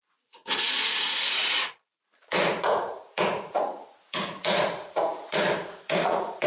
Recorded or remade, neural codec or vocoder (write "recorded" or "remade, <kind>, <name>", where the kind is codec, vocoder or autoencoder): remade, vocoder, Vocos